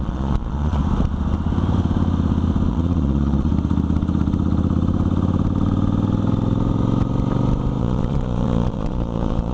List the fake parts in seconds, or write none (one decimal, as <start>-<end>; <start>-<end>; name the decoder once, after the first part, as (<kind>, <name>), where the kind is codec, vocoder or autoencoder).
0.0-0.8 (vocoder, Vocos); 2.7-3.5; 7.8-9.5